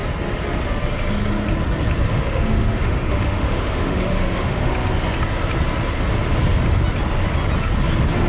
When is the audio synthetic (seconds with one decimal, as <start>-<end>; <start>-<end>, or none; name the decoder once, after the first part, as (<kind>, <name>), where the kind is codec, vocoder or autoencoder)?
2.1-4.7 (autoencoder, DAC-VAE)